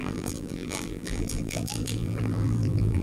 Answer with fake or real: fake